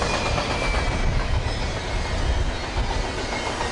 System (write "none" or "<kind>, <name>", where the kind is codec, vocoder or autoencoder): none